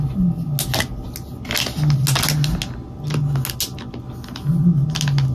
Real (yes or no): yes